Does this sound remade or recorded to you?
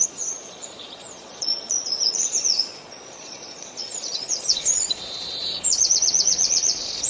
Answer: remade